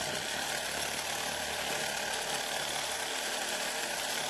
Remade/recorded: remade